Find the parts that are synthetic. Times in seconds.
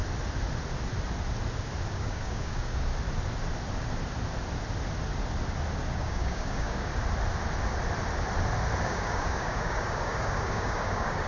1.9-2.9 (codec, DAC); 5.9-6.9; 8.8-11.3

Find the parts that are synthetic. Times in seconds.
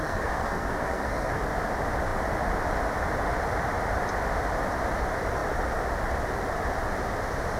0.0-1.4 (codec, SNAC)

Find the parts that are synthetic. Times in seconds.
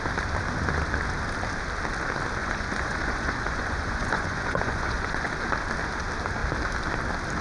2.4-5.3 (vocoder, Vocos)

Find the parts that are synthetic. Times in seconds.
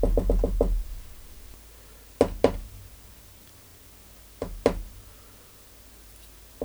none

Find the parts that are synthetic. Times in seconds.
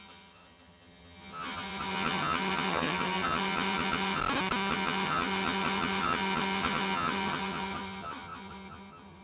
0.0-4.2 (vocoder, HiFi-GAN); 4.7-9.2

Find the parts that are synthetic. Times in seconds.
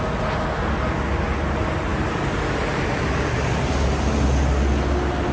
none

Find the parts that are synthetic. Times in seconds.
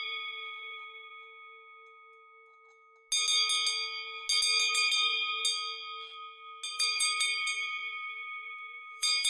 0.0-1.1 (vocoder, BigVGAN v2); 4.7-5.4; 6.7-9.3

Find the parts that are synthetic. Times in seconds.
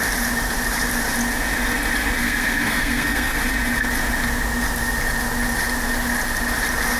2.2-3.4 (codec, SNAC)